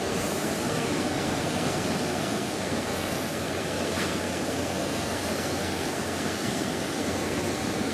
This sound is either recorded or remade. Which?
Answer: remade